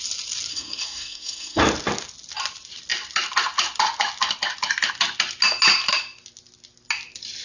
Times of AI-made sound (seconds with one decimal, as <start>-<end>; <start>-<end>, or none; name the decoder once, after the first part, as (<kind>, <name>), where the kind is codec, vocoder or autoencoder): 0.5-1.6 (codec, SNAC)